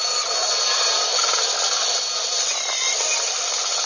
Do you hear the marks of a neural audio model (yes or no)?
no